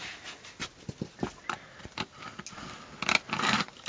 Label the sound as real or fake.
real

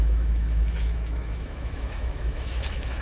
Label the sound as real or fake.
fake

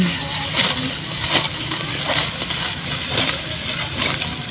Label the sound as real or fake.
real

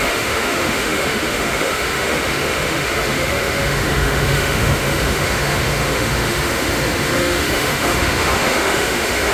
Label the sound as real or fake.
fake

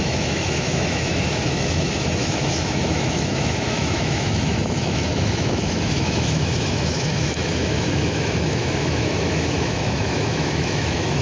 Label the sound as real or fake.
fake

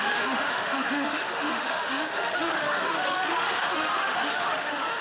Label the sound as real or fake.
fake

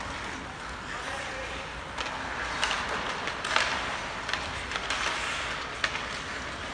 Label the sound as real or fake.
real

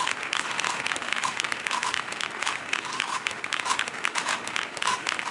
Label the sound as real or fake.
fake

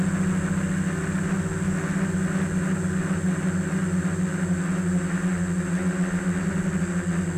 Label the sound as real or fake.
real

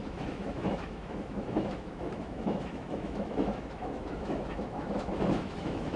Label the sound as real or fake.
fake